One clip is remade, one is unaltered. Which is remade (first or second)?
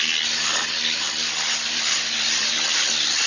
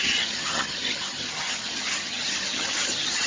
second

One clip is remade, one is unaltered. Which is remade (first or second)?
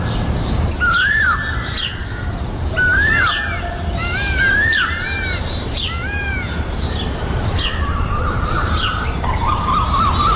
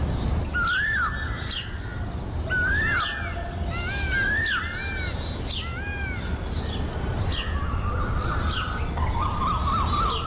first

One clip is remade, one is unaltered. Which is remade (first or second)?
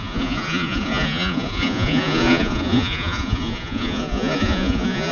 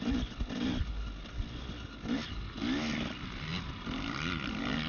first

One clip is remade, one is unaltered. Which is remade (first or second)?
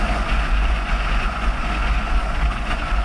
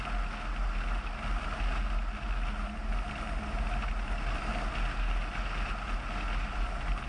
first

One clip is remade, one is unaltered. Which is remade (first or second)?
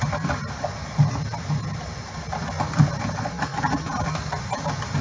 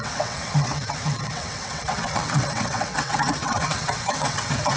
second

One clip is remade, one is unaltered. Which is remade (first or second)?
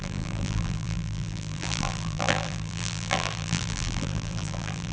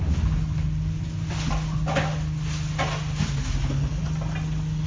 first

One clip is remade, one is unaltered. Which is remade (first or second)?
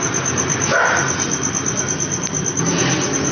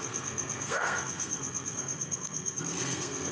second